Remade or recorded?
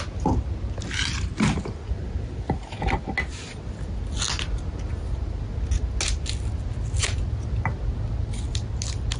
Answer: recorded